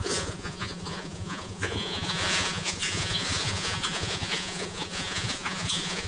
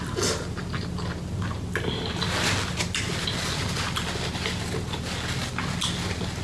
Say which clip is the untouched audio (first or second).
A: second